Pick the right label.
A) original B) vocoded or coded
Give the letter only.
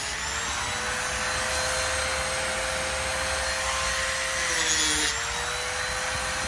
A